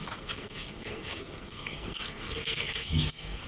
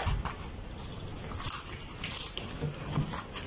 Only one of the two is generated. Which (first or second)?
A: first